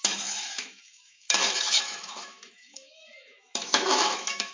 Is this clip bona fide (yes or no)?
no